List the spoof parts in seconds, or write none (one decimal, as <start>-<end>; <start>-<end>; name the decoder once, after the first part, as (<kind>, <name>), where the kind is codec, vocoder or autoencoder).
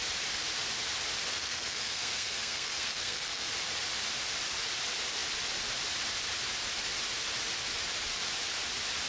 1.3-3.5 (codec, SNAC)